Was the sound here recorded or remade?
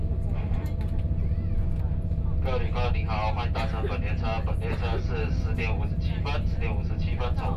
recorded